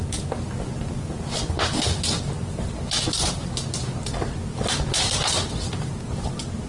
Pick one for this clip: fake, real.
real